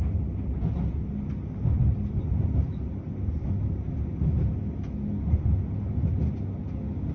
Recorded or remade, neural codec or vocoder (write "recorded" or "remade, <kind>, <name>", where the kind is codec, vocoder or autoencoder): recorded